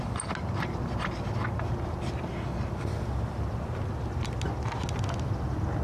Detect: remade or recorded recorded